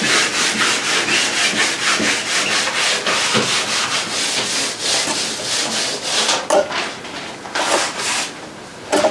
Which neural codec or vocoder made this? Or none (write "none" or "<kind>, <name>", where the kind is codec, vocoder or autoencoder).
none